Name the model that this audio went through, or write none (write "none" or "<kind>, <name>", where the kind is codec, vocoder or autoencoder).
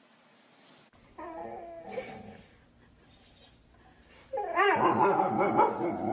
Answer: none